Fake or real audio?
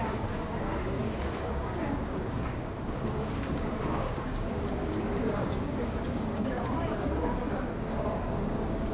fake